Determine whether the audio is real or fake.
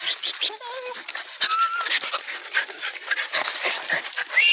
real